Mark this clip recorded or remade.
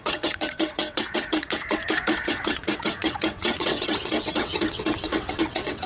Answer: remade